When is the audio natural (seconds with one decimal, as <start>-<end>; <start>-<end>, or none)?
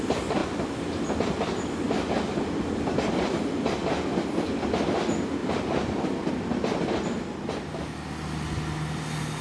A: 0.0-5.4; 6.3-9.4